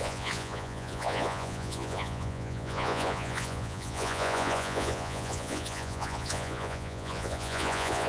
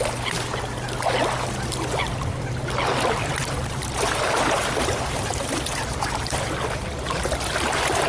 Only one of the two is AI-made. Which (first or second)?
first